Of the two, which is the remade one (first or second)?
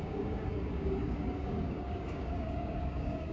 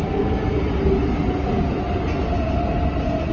first